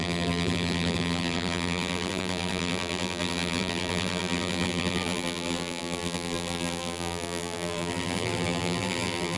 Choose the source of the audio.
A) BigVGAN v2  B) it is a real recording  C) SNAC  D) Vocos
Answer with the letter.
A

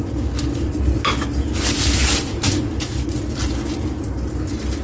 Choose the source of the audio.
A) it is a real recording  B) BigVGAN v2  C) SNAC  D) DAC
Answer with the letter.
A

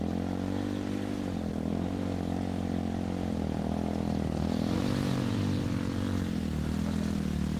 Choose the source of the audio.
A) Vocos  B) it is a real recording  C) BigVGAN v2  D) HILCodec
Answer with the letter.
B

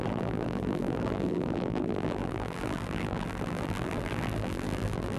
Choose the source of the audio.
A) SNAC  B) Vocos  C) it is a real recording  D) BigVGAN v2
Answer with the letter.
D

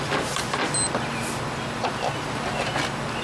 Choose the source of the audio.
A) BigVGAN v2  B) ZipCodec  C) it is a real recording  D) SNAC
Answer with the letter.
C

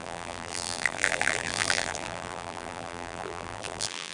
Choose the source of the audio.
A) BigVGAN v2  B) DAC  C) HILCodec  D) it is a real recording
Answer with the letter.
A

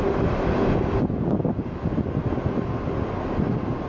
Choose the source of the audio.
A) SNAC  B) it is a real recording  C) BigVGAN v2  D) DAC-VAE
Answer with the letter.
B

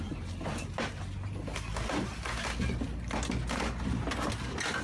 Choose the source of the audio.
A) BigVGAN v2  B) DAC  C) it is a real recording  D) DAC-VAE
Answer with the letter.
C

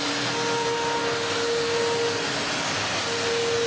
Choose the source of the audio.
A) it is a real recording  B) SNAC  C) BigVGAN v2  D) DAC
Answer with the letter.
A